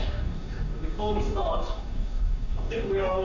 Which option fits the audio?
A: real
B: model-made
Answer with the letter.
B